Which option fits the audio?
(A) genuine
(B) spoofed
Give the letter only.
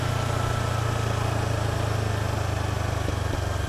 A